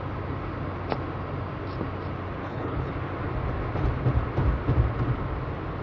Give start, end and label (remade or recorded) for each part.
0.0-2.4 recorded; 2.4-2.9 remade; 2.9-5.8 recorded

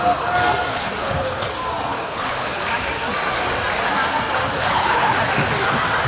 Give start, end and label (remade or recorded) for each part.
0.0-0.7 recorded; 0.7-1.5 remade; 1.5-1.9 recorded; 1.9-2.6 remade; 2.6-4.6 recorded; 4.6-5.2 remade; 5.2-6.1 recorded

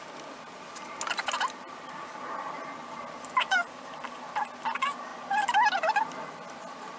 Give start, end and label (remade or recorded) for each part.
0.0-7.0 recorded